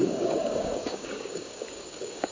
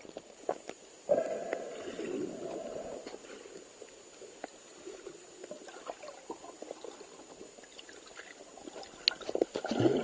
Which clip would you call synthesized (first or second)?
first